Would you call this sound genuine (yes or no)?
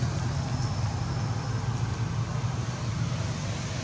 yes